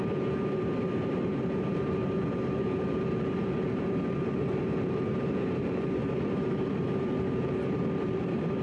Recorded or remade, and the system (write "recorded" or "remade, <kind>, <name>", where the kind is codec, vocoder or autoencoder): remade, vocoder, BigVGAN v2